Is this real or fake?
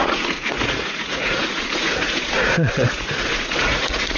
fake